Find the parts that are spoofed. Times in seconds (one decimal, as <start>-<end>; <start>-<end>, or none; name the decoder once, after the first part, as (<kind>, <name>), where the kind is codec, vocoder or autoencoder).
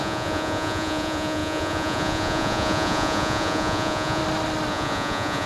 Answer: 0.0-4.2 (vocoder, Vocos); 4.7-5.5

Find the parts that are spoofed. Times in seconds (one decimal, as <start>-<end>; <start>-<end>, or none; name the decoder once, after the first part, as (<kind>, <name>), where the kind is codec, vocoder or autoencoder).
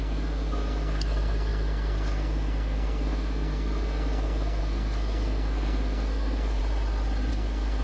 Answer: 0.0-6.6 (codec, SNAC); 7.3-7.8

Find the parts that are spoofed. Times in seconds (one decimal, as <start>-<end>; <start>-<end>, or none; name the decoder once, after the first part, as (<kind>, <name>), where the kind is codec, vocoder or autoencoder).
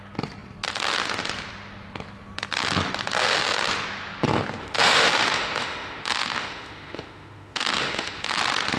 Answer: 4.6-8.4 (autoencoder, DAC-VAE)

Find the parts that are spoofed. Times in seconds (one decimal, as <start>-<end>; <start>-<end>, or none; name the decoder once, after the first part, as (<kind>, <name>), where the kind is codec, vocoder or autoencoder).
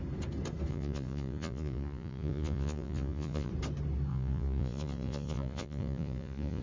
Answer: 0.7-3.5 (vocoder, Vocos); 4.1-6.6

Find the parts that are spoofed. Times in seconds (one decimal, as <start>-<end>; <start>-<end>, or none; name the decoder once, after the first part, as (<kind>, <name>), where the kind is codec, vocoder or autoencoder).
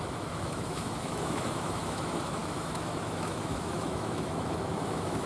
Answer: 0.0-5.3 (autoencoder, DAC-VAE)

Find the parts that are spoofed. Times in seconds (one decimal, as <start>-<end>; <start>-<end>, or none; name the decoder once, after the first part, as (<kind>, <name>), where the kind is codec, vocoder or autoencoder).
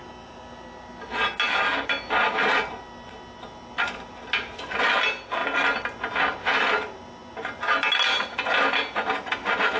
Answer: none